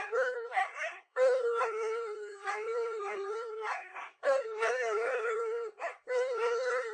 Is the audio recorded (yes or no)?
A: no